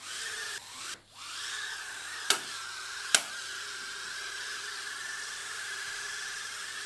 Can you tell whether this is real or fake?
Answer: real